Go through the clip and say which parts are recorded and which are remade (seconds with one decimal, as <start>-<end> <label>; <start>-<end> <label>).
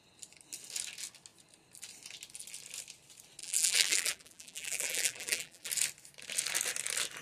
0.0-3.4 recorded; 3.4-5.7 remade; 5.7-7.2 recorded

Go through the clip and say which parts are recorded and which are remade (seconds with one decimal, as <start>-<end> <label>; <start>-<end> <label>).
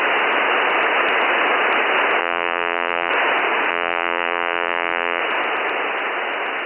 0.0-2.2 recorded; 2.2-3.1 remade; 3.1-3.7 recorded; 3.7-5.2 remade; 5.2-6.7 recorded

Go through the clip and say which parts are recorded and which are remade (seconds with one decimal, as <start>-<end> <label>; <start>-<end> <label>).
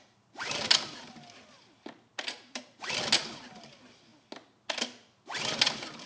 0.0-6.1 recorded